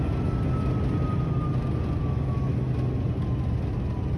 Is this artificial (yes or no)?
no